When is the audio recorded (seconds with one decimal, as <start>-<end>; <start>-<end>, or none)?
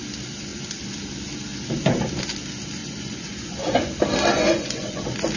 0.0-2.8; 3.9-4.3; 5.0-5.4